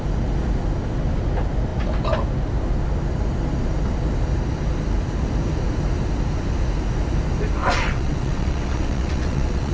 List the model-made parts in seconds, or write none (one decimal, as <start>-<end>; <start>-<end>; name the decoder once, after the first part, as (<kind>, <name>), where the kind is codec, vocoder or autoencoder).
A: 7.6-9.7 (vocoder, WaveNeXt)